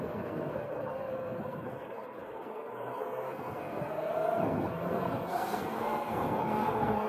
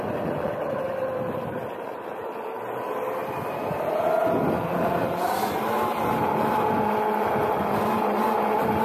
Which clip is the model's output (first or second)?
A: first